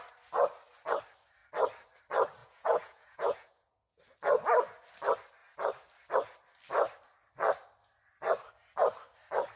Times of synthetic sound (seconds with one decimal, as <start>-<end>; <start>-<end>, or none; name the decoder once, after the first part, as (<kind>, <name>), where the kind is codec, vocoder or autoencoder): 2.4-4.0 (vocoder, Vocos)